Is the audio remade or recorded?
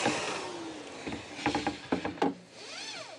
recorded